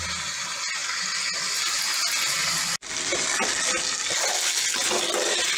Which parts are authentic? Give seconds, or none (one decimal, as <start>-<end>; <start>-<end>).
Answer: 0.0-5.6